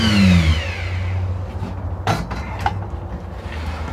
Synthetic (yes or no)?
no